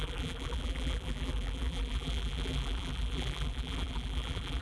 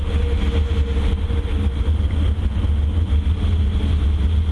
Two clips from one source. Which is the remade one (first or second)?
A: first